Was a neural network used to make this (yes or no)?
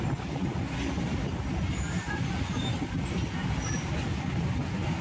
no